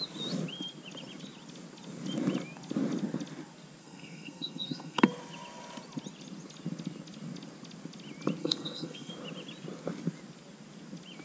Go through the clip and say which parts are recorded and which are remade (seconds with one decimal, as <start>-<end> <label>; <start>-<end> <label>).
0.0-3.8 recorded; 3.8-5.0 remade; 5.0-8.4 recorded; 8.4-9.1 remade; 9.1-11.2 recorded